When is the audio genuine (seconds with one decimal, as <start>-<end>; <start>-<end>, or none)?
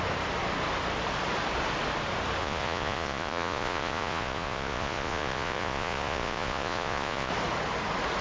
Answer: 0.0-2.4; 7.3-8.2